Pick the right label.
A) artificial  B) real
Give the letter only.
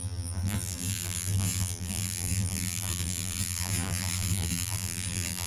A